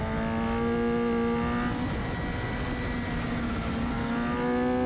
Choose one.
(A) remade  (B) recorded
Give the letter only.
B